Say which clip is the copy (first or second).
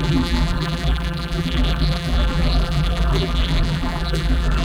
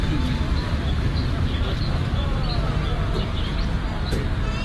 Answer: first